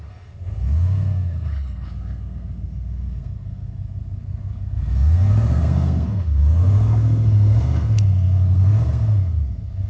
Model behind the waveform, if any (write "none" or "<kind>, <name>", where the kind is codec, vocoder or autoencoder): codec, SNAC